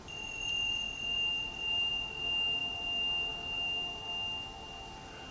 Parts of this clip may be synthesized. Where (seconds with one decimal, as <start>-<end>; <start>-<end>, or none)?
0.0-1.9; 2.6-4.1